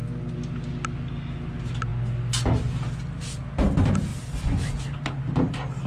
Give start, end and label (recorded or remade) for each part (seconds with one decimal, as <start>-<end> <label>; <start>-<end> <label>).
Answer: 0.0-4.1 recorded; 4.1-5.2 remade; 5.2-5.9 recorded

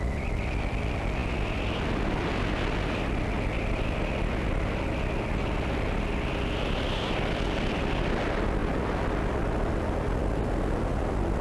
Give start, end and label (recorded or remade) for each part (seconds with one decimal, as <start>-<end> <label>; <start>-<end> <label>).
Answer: 0.0-11.4 recorded

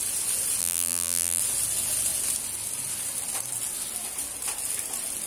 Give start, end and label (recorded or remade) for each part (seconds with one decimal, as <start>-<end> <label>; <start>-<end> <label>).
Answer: 0.0-0.6 recorded; 0.6-1.4 remade; 1.4-5.3 recorded

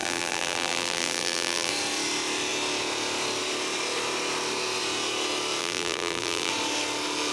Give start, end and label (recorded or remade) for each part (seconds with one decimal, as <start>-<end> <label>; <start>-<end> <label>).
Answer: 0.0-1.7 remade; 1.7-5.6 recorded; 5.6-6.5 remade; 6.5-7.3 recorded